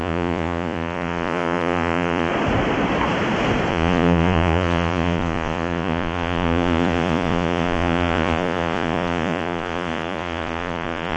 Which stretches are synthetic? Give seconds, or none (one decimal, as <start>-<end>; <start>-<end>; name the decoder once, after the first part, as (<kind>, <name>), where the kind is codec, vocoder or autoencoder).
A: 0.0-2.3 (vocoder, Vocos); 3.7-11.2